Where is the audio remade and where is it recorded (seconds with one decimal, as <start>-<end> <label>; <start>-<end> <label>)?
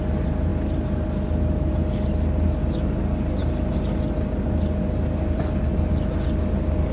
0.0-3.4 recorded; 3.4-4.4 remade; 4.4-6.9 recorded